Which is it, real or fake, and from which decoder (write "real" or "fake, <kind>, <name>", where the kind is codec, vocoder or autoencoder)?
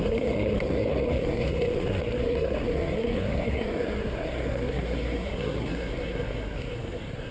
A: fake, codec, SNAC